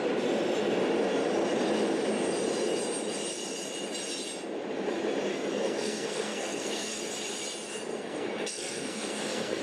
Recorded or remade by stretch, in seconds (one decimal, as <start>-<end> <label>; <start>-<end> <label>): 0.0-5.3 recorded; 5.3-7.0 remade; 7.0-7.9 recorded; 7.9-9.6 remade